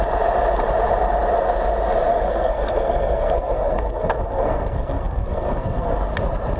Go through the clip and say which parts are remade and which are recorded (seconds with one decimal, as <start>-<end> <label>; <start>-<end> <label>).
0.0-2.1 recorded; 2.1-6.1 remade; 6.1-6.6 recorded